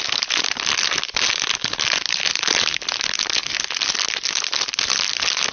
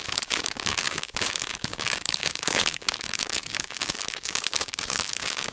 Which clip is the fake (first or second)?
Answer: second